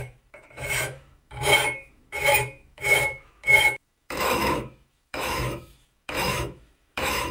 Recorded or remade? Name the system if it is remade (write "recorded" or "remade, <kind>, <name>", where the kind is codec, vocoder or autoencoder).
remade, autoencoder, DAC-VAE